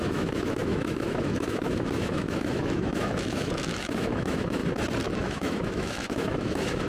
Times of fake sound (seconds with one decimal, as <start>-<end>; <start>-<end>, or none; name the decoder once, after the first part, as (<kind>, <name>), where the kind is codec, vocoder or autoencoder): 0.0-4.6 (autoencoder, DAC-VAE); 5.2-6.9